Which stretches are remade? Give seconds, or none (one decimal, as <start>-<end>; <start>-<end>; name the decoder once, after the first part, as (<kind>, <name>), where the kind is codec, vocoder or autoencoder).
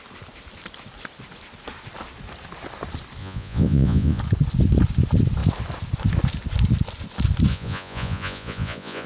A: 3.2-4.2 (vocoder, Vocos); 7.5-9.1